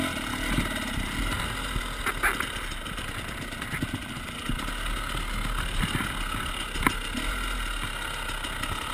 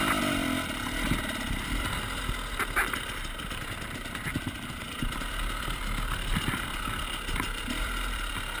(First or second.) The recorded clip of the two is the first